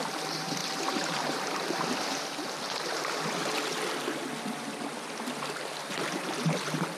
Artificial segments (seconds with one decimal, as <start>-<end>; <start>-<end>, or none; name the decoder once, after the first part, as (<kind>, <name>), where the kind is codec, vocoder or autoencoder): 0.0-3.4 (vocoder, BigVGAN v2)